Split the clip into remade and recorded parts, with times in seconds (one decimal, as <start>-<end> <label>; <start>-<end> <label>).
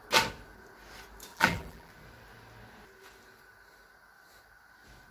0.0-1.3 recorded; 1.3-1.9 remade; 1.9-5.1 recorded